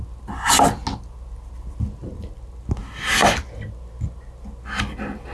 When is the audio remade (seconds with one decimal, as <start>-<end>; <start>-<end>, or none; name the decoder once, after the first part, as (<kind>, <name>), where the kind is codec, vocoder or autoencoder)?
none